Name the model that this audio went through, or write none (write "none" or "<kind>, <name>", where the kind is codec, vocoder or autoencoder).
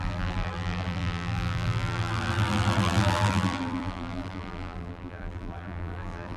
vocoder, BigVGAN v2